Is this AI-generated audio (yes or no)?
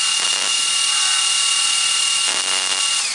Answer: no